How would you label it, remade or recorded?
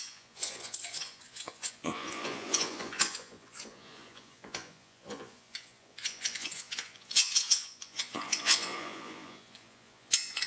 remade